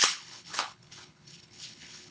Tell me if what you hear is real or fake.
fake